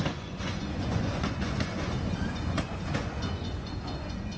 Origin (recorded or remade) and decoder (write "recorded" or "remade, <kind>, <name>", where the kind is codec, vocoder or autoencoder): remade, vocoder, Vocos